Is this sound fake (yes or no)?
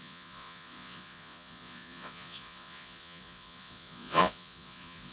yes